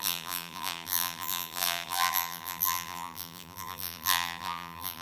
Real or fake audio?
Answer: fake